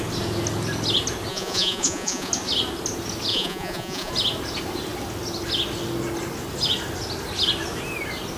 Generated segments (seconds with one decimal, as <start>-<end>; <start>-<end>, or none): 1.3-2.3; 3.3-4.1